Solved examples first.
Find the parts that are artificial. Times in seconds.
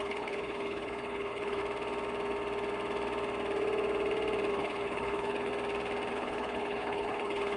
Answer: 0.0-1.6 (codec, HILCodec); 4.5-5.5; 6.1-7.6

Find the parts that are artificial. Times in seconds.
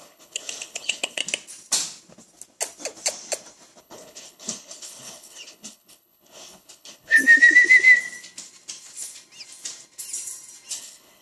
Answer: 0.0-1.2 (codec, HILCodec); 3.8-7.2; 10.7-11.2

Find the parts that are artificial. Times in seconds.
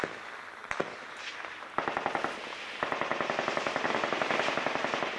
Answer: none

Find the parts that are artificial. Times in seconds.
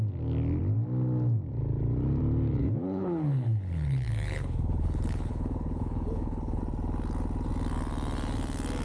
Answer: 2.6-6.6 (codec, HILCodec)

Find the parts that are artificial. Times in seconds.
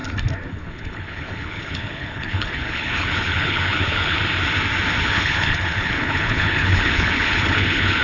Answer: 0.5-4.2 (codec, HILCodec); 5.0-8.0